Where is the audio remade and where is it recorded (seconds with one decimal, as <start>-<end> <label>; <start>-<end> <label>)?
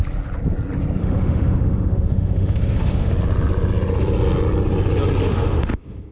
0.0-1.0 recorded; 1.0-3.1 remade; 3.1-5.2 recorded; 5.2-6.1 remade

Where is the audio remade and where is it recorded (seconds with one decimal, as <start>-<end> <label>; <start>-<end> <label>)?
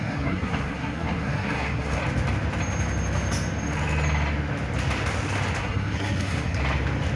0.0-2.0 remade; 2.0-5.6 recorded; 5.6-6.6 remade; 6.6-7.2 recorded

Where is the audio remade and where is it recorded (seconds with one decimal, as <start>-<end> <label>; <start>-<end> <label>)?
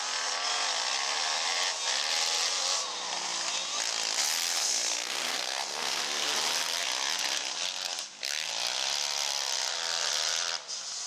0.0-4.6 recorded; 4.6-6.0 remade; 6.0-11.1 recorded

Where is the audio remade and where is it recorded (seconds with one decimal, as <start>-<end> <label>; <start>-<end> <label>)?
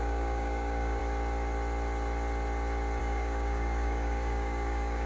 0.0-1.0 remade; 1.0-3.0 recorded; 3.0-5.1 remade